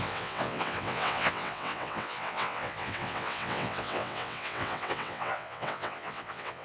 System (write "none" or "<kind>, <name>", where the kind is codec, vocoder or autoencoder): vocoder, WaveNeXt